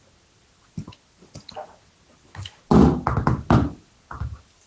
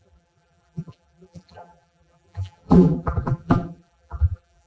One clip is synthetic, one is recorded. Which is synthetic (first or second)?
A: second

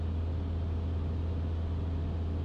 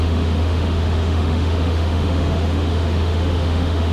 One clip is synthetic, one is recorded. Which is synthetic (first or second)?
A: second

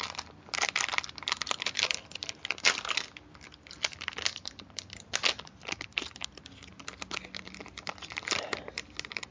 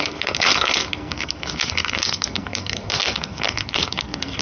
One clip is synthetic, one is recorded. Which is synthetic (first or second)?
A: second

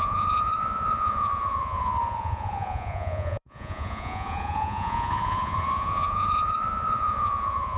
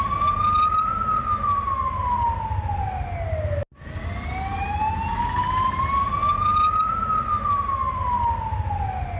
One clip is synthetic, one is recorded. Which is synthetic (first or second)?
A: first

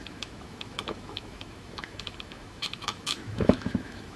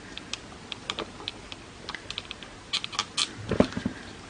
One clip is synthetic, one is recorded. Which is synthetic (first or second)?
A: first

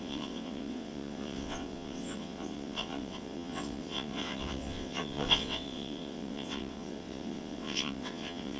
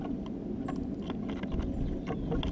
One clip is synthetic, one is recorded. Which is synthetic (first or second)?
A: first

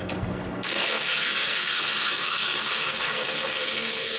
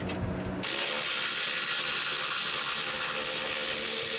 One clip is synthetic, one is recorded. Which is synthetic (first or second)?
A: first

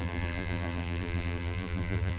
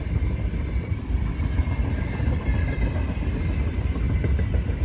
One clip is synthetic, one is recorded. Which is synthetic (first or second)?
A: first